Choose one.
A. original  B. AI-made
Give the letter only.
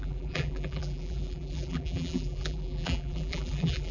B